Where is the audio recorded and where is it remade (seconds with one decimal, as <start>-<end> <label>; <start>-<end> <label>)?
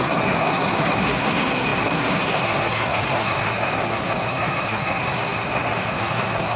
0.0-6.6 remade